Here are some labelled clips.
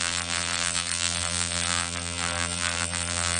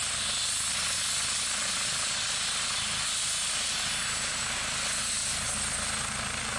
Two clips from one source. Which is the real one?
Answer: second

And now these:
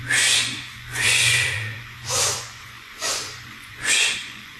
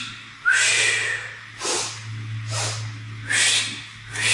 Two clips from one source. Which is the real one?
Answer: second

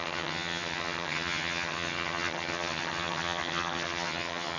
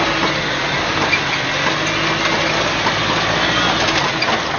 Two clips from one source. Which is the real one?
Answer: second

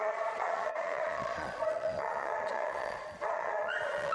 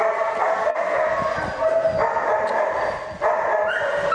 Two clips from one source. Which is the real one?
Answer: second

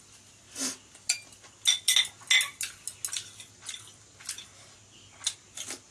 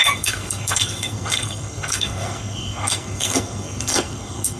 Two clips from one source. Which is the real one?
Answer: first